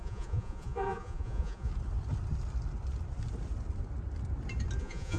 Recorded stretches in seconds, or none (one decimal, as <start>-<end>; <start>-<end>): 1.7-4.8